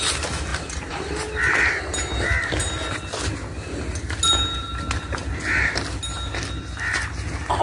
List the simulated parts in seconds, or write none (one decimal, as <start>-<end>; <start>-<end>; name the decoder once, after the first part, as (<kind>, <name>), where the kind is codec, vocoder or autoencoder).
none